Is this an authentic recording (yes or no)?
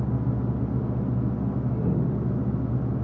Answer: yes